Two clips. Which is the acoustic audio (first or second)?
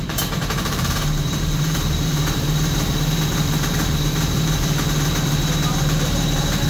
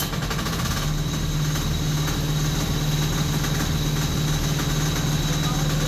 second